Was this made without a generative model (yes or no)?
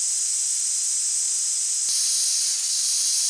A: yes